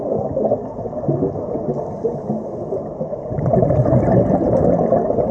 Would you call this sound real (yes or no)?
yes